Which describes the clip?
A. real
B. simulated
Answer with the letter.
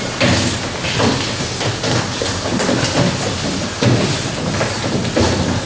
A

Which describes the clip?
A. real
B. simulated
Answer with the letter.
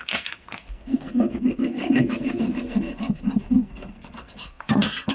B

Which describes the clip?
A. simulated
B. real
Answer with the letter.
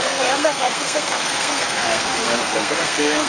A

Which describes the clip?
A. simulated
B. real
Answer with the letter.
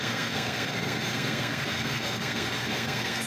A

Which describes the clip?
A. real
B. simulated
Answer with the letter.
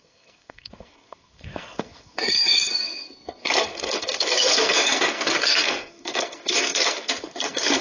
B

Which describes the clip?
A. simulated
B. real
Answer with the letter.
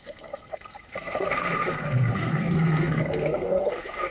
A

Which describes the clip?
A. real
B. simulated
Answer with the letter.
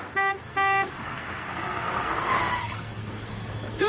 B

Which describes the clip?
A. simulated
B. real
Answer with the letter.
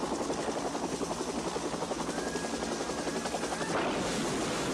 B